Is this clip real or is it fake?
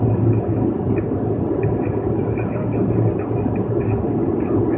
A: real